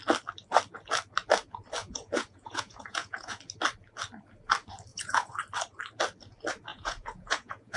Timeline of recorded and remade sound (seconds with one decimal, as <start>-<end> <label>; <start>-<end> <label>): 0.0-1.8 recorded; 1.8-3.4 remade; 3.4-4.9 recorded; 4.9-5.4 remade; 5.4-6.7 recorded; 6.7-7.8 remade